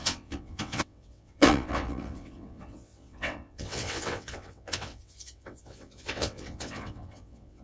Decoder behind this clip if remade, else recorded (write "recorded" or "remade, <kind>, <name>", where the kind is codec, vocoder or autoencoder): remade, vocoder, WaveNeXt